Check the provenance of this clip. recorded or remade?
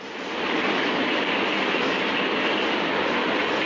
recorded